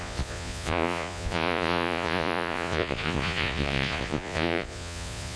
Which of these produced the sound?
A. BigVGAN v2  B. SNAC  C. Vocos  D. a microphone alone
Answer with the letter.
C